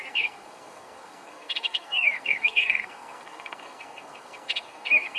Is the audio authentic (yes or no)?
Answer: no